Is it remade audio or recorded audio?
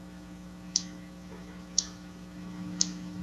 remade